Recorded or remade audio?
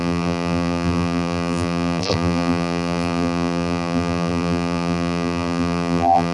remade